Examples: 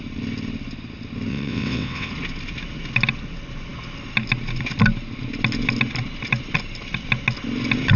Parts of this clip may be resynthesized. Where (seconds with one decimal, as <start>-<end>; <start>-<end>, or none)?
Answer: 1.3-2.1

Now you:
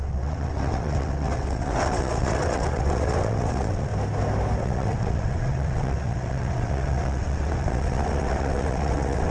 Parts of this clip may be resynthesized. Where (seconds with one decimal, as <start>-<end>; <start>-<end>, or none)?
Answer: 0.0-3.9; 4.6-9.3

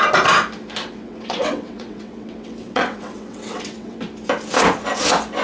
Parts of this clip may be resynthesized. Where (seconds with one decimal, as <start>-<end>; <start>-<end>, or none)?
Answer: 0.8-4.0

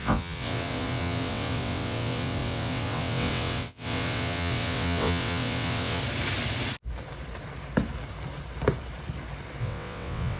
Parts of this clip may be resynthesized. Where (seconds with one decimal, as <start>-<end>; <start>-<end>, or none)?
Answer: 0.0-6.0; 9.6-10.4

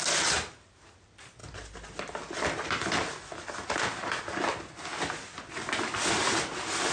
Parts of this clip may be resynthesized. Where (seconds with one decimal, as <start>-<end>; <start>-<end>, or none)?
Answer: none

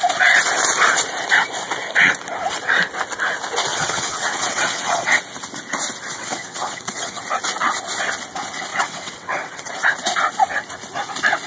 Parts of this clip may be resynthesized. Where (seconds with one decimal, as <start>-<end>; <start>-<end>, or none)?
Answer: 3.7-5.2; 6.1-7.2; 8.7-9.7